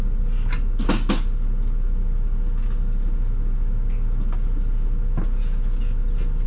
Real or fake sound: real